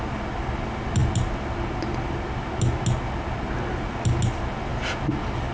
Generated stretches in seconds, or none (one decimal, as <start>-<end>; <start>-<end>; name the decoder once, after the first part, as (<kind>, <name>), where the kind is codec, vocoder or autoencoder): none